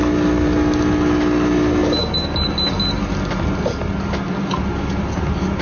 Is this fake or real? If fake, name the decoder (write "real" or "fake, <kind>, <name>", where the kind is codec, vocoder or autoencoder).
real